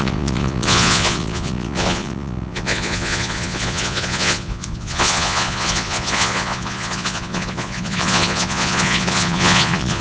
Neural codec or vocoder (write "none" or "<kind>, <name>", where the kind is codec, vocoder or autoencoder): vocoder, Vocos